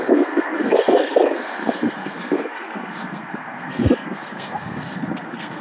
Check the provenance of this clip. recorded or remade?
remade